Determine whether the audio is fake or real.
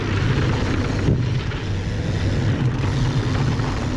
real